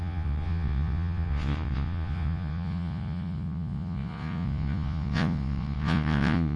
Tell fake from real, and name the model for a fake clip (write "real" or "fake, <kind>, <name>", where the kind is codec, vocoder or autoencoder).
fake, vocoder, Vocos